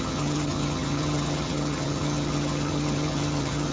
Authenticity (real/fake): fake